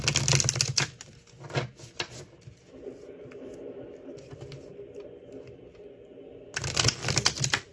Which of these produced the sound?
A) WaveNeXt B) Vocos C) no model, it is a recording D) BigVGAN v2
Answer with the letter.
C